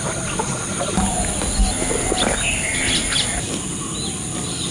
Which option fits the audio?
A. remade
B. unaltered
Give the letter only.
B